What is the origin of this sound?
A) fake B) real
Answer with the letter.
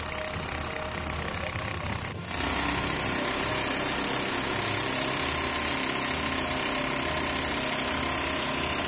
B